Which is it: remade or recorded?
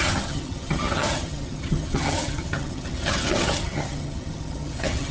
remade